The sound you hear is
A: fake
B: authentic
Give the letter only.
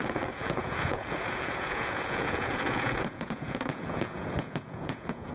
A